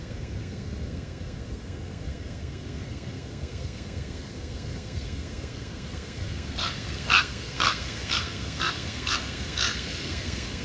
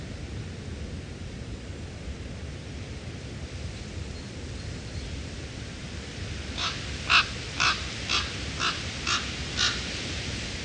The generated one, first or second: first